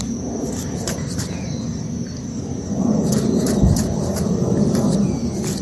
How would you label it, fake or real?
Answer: real